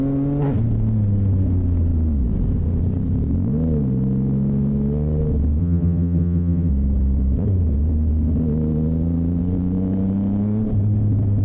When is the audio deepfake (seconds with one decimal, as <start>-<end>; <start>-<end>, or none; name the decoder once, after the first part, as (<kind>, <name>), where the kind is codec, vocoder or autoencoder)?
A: 5.6-6.7 (vocoder, HiFi-GAN)